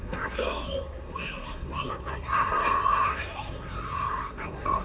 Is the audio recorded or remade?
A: remade